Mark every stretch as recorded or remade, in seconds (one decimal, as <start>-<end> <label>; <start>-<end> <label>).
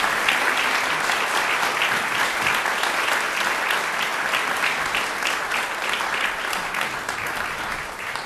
0.0-4.1 recorded; 4.1-5.4 remade; 5.4-8.3 recorded